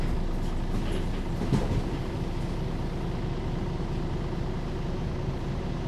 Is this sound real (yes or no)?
yes